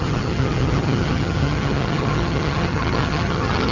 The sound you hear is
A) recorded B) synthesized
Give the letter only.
B